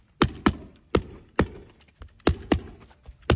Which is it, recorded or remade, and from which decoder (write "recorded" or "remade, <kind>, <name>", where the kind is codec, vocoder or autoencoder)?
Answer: recorded